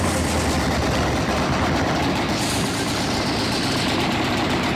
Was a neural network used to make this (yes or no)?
no